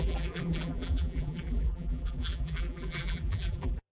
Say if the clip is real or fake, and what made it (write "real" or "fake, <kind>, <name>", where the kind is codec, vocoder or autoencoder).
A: fake, vocoder, BigVGAN v2